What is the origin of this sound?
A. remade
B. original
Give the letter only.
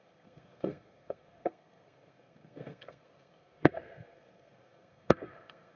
A